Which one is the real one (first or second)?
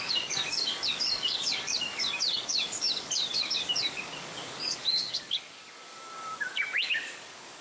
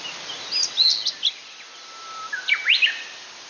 second